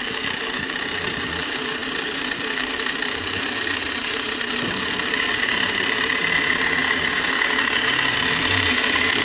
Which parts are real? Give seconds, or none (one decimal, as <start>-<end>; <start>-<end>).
6.8-8.3